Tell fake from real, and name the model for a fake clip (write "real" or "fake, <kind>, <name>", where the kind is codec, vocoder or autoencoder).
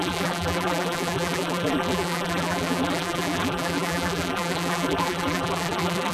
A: fake, vocoder, BigVGAN v2